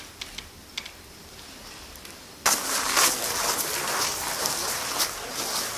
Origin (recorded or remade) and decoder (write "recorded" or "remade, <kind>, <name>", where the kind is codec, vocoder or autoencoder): recorded